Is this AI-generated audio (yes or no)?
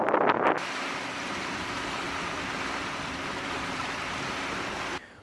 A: no